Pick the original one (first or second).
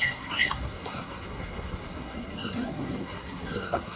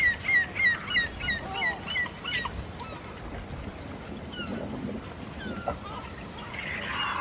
second